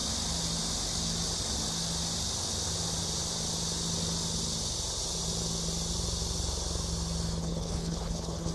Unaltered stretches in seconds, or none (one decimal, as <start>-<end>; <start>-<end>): 0.0-7.4